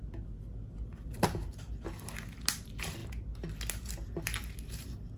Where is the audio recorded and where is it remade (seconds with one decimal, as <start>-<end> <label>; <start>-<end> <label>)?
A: 0.0-5.2 recorded